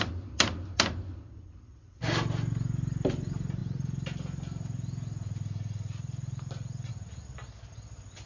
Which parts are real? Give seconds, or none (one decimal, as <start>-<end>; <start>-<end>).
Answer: 0.0-8.3